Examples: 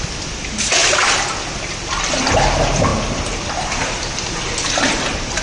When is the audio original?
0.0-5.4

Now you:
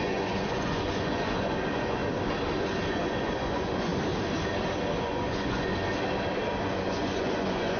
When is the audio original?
2.0-2.9; 3.9-5.0; 5.7-6.6

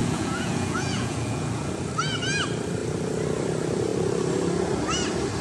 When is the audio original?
1.7-5.4

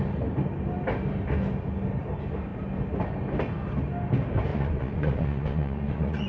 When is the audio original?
0.0-4.5

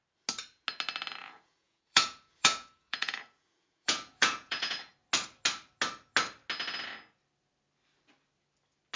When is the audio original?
0.0-1.2; 4.9-9.0

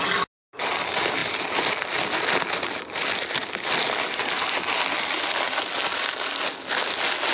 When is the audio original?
0.0-7.3

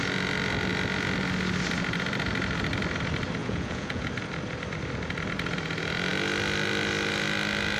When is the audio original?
0.0-3.4; 4.1-7.8